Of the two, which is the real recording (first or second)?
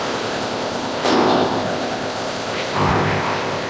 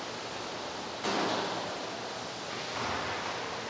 second